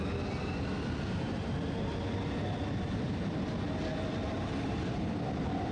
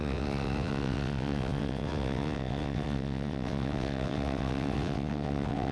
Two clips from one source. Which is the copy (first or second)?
second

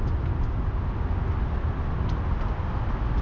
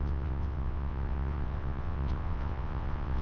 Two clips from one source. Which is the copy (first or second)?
second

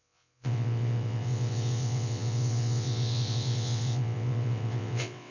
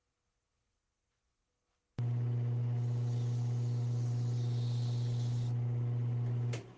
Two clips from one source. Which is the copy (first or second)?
first